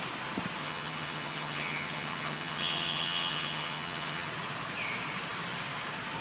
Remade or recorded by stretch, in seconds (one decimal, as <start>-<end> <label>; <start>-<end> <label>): 0.0-0.6 recorded; 0.6-4.3 remade; 4.3-6.2 recorded